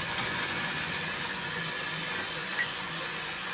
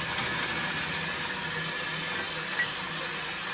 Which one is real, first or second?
second